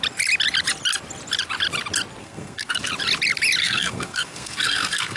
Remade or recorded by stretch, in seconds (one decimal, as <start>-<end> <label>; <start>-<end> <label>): 0.0-2.2 recorded; 2.2-2.9 remade; 2.9-3.6 recorded; 3.6-5.2 remade